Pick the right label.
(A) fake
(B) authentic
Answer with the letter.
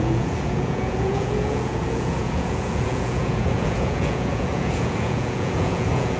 A